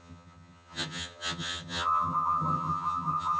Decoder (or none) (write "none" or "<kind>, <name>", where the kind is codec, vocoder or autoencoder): vocoder, HiFi-GAN